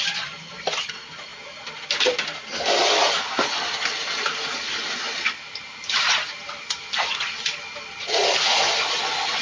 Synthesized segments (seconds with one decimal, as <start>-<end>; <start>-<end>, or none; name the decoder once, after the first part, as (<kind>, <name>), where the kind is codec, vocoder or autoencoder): none